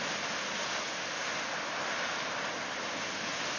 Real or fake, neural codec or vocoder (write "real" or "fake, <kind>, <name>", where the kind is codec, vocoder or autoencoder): real